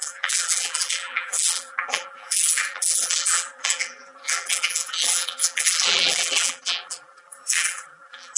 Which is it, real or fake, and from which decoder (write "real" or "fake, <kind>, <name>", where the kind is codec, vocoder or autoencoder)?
fake, vocoder, BigVGAN v2